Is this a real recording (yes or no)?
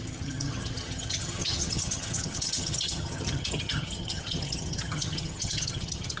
no